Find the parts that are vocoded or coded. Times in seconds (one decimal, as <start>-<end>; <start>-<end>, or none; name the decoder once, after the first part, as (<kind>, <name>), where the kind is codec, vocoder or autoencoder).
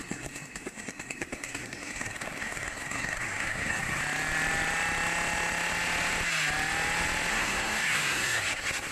0.0-4.0 (codec, SNAC); 7.3-8.9